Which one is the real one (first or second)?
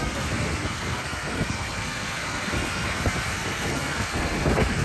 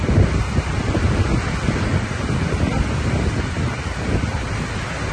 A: second